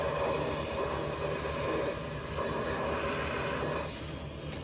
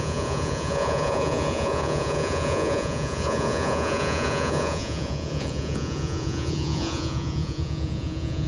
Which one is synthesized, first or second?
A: second